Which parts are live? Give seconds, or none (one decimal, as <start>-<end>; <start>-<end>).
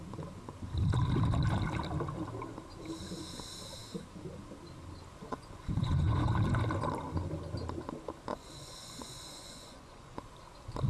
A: 0.0-5.1; 6.3-8.3; 10.2-10.9